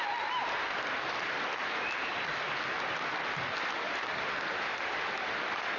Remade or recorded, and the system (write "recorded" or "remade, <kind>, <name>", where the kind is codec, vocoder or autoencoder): recorded